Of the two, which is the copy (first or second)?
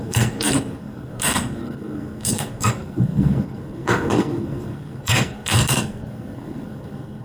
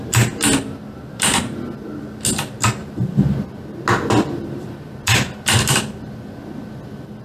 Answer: first